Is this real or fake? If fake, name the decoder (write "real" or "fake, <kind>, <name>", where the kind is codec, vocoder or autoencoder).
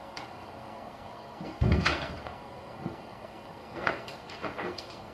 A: fake, codec, SNAC